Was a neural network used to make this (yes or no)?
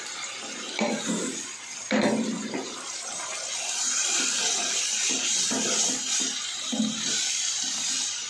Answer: no